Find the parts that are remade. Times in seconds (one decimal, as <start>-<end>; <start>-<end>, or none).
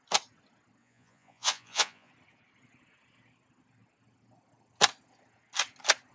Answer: 0.8-2.1